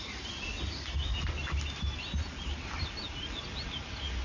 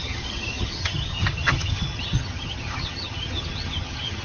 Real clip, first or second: first